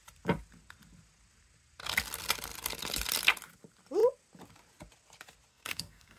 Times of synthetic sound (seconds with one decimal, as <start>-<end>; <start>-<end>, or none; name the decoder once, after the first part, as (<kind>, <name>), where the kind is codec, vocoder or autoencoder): 5.5-6.2 (codec, SNAC)